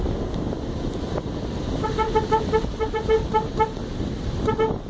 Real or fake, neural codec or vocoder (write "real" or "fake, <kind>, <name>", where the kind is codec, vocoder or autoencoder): real